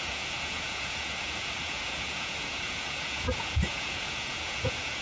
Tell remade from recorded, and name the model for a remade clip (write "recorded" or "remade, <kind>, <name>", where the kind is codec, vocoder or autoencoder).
remade, vocoder, Vocos